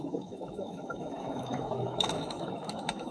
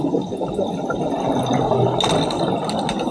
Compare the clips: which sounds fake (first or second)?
first